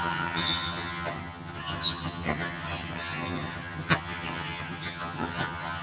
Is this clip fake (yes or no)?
yes